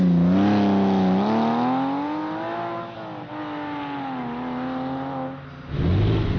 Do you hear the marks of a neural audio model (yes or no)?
no